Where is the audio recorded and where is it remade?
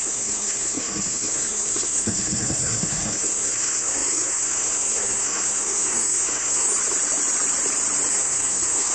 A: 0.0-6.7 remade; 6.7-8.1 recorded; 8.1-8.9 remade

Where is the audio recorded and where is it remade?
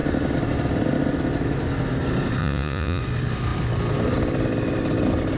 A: 0.0-2.4 recorded; 2.4-3.0 remade; 3.0-5.4 recorded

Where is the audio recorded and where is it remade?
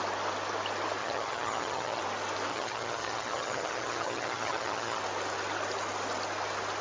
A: 0.0-1.0 recorded; 1.0-2.0 remade; 2.0-2.5 recorded; 2.5-5.0 remade; 5.0-6.8 recorded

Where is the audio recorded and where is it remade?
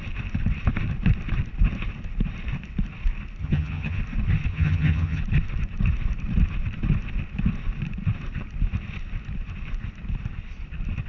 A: 0.0-3.4 recorded; 3.4-4.0 remade; 4.0-4.5 recorded; 4.5-5.2 remade; 5.2-11.1 recorded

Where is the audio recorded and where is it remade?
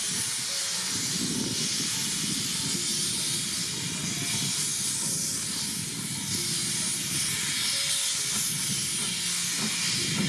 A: 0.0-10.3 recorded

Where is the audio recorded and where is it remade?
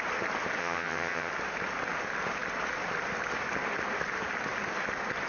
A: 0.0-0.6 recorded; 0.6-1.3 remade; 1.3-5.3 recorded